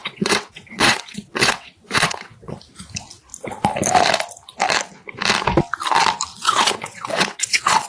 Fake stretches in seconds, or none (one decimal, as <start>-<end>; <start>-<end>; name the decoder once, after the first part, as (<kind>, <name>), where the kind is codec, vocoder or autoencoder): 0.0-2.5 (vocoder, WaveNeXt); 6.3-7.9